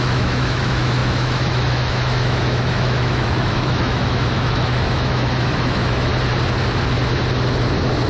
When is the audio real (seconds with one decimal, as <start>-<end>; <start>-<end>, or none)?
6.1-8.1